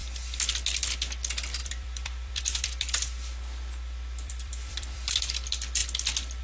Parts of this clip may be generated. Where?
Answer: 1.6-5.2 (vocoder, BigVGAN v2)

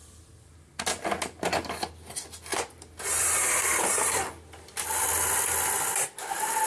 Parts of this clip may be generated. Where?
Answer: 0.0-0.8 (vocoder, BigVGAN v2); 2.5-4.3